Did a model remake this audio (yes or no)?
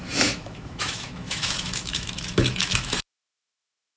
yes